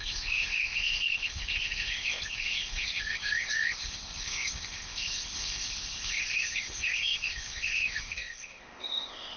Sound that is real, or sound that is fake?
fake